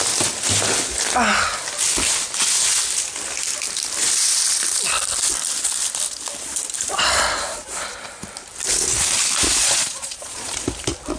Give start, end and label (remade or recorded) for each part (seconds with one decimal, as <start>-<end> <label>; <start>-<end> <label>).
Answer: 0.0-9.6 recorded; 9.6-10.6 remade; 10.6-11.2 recorded